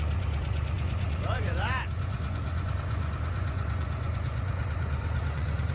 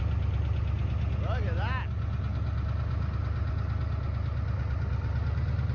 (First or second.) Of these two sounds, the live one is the second